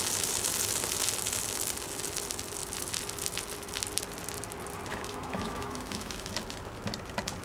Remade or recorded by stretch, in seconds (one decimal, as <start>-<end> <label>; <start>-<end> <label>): 0.0-4.9 recorded; 4.9-6.3 remade; 6.3-7.4 recorded

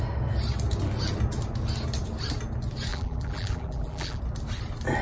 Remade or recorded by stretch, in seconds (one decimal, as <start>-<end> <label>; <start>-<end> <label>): 0.0-2.9 recorded; 2.9-4.2 remade; 4.2-5.0 recorded